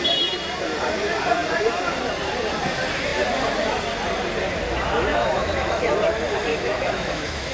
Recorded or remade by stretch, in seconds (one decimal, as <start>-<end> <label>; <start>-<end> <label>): 0.0-5.1 recorded; 5.1-5.9 remade; 5.9-6.5 recorded; 6.5-7.5 remade